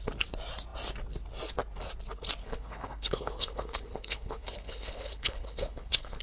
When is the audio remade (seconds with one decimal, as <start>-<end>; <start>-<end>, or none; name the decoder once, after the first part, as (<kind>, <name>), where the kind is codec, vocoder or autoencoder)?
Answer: 2.4-6.2 (codec, HILCodec)